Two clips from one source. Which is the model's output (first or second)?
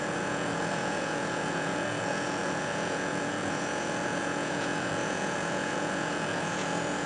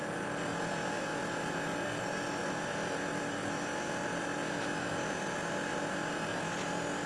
first